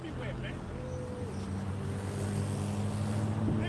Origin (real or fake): real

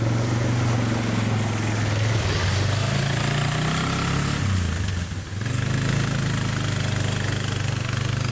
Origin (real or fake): real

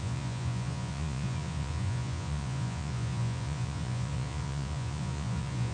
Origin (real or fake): fake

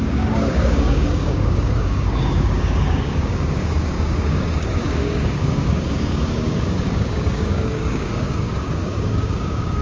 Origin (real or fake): fake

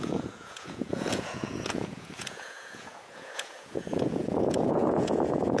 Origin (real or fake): fake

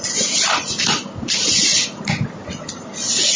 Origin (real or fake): real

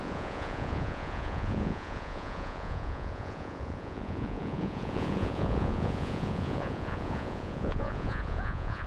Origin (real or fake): fake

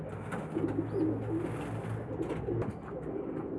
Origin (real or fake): real